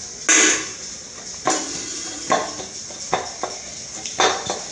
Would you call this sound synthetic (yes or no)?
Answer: no